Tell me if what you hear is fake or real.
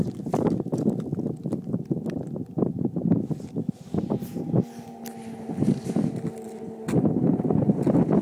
real